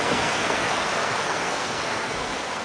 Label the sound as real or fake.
fake